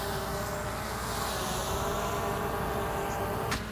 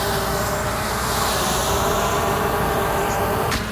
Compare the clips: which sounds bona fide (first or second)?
first